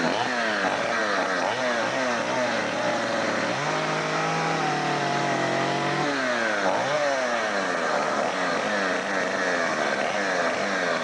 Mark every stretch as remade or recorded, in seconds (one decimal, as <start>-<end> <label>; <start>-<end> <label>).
0.0-11.0 recorded